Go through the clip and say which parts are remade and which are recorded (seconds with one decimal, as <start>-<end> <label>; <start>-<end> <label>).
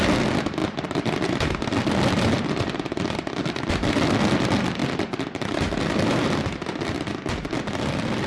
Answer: 0.0-0.6 recorded; 0.6-3.5 remade; 3.5-4.8 recorded; 4.8-6.1 remade; 6.1-8.3 recorded